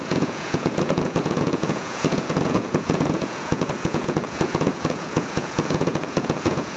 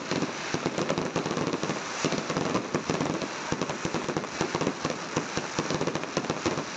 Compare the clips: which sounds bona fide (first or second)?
second